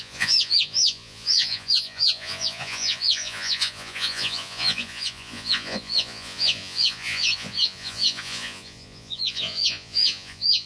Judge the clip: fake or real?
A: fake